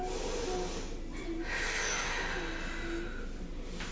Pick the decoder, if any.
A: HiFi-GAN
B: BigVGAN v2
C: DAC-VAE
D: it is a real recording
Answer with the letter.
D